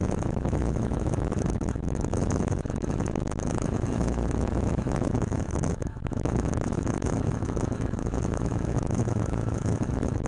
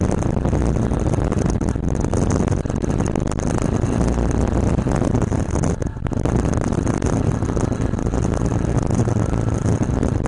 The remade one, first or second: first